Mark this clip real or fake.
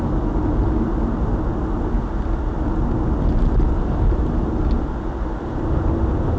real